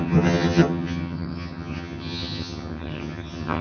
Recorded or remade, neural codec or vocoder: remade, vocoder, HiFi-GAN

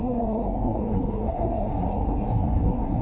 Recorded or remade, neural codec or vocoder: remade, codec, SNAC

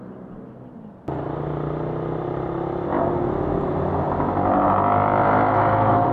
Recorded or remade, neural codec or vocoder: recorded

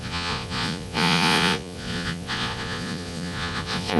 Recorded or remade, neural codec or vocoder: remade, vocoder, Vocos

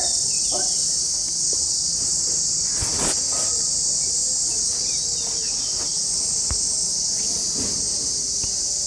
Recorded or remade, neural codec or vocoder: recorded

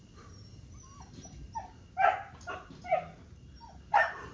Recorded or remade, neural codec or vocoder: recorded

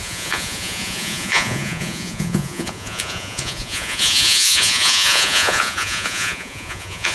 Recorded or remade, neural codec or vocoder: remade, vocoder, Vocos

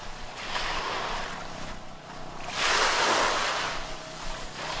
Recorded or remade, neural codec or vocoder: recorded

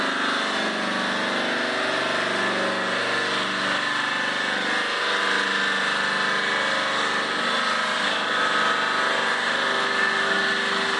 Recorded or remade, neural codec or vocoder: recorded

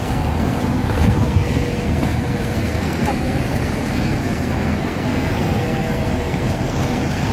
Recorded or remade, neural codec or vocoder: remade, codec, SNAC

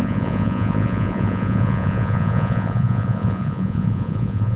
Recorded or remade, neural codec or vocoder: remade, vocoder, Vocos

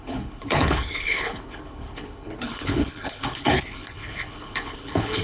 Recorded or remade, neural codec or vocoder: remade, codec, HILCodec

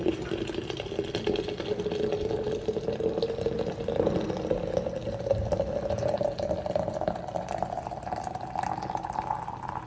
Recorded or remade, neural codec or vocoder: recorded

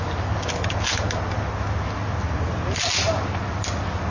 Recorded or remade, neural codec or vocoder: recorded